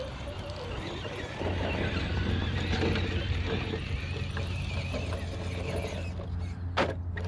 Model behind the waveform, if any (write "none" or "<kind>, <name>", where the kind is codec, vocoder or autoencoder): none